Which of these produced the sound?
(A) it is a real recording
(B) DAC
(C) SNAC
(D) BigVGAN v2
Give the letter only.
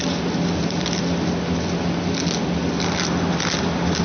A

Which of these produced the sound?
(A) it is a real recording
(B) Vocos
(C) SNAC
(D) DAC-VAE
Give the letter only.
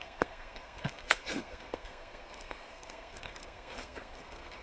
C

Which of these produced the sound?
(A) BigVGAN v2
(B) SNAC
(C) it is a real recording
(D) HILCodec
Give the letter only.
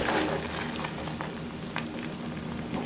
C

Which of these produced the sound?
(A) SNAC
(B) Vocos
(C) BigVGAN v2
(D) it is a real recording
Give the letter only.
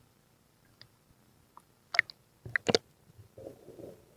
D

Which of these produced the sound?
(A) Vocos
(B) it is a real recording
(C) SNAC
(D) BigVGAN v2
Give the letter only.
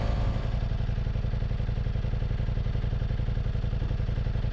B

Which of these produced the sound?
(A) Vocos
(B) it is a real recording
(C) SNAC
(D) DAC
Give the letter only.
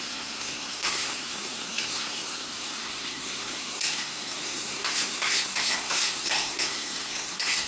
C